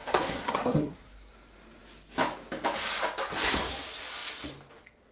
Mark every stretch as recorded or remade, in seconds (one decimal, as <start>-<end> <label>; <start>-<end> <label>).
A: 0.0-1.3 remade; 1.3-5.1 recorded